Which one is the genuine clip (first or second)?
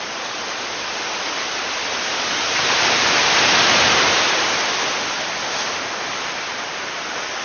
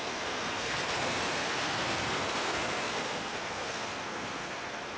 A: first